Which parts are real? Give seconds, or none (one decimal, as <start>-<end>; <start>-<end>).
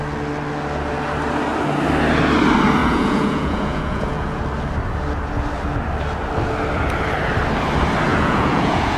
0.0-2.8; 4.4-8.1